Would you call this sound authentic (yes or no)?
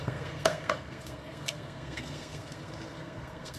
no